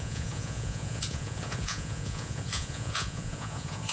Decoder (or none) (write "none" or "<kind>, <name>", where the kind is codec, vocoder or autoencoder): vocoder, Vocos